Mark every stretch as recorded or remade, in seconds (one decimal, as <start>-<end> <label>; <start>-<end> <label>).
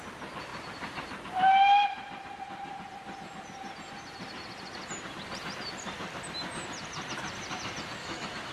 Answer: 0.0-8.0 recorded; 8.0-8.5 remade